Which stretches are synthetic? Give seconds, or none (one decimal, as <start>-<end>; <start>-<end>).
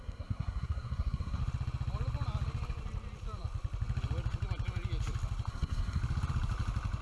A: 0.0-1.4; 5.5-6.0